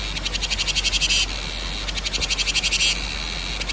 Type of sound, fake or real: real